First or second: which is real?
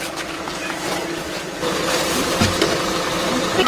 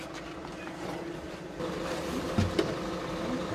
second